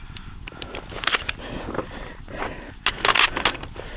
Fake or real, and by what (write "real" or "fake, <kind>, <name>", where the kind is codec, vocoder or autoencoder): real